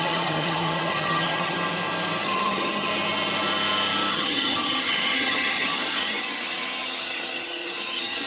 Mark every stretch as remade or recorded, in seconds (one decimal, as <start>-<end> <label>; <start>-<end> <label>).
0.0-1.6 remade; 1.6-2.2 recorded; 2.2-2.9 remade; 2.9-4.1 recorded; 4.1-8.3 remade